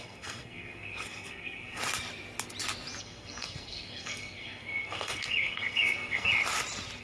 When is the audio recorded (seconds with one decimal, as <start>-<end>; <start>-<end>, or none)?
1.8-3.0; 6.3-7.0